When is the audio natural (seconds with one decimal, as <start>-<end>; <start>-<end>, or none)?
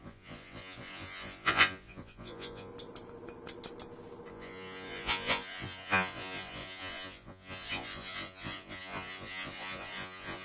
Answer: 2.7-4.3